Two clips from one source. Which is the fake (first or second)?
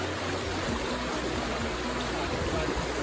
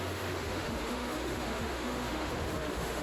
second